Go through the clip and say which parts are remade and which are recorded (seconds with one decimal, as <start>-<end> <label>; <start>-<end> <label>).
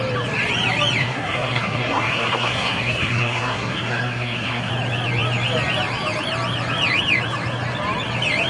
0.0-1.0 recorded; 1.0-4.7 remade; 4.7-8.5 recorded